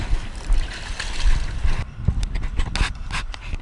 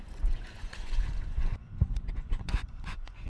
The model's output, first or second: second